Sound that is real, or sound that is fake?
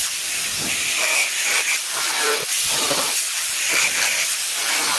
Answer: fake